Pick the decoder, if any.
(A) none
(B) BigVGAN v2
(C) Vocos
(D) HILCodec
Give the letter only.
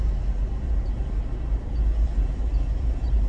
A